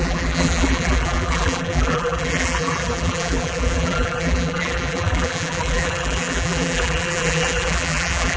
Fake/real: fake